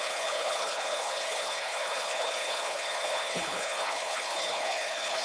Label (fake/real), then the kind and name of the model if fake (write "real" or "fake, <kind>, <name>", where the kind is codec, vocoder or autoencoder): fake, codec, HILCodec